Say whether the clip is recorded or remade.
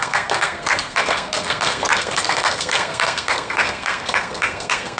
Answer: remade